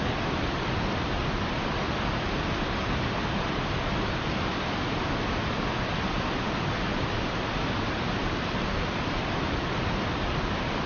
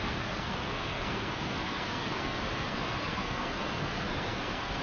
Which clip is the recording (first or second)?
first